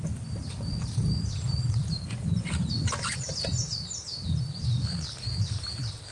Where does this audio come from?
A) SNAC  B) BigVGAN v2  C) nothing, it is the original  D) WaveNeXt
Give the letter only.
B